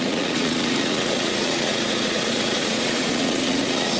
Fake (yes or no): yes